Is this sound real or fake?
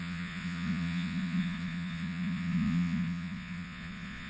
fake